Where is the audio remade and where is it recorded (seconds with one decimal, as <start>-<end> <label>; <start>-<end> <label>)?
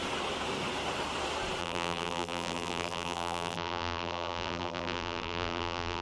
0.0-1.6 recorded; 1.6-6.0 remade